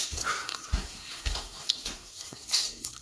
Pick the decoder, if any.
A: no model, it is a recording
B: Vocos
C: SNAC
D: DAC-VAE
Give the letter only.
C